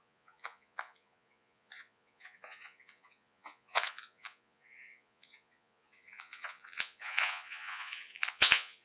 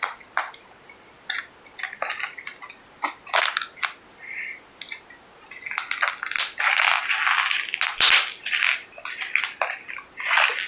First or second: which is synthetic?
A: first